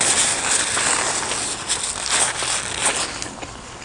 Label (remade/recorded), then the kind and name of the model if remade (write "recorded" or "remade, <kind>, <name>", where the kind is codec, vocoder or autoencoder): recorded